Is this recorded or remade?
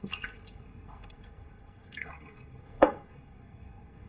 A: remade